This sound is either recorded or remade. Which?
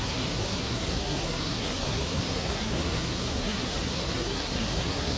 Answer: remade